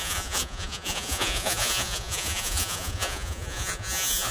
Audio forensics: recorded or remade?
remade